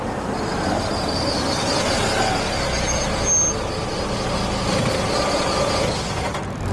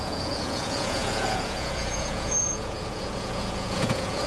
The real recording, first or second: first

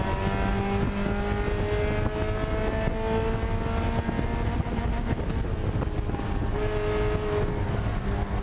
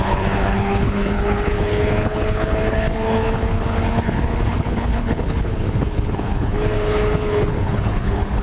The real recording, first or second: first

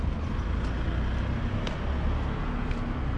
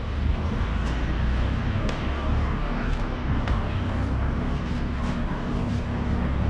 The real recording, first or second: first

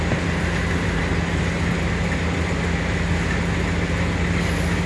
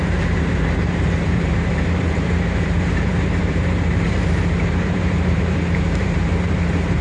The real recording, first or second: first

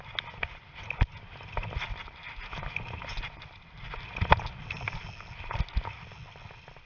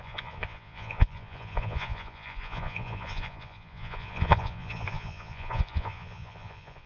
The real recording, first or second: first